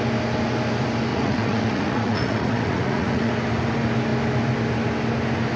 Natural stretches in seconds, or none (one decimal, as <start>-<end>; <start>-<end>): 0.0-1.1; 3.3-5.6